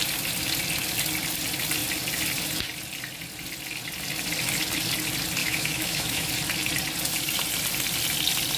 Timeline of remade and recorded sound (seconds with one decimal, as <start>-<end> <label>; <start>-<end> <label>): 0.0-5.4 recorded; 5.4-6.3 remade; 6.3-8.6 recorded